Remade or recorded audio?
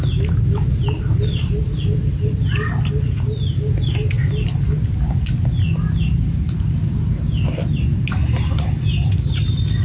recorded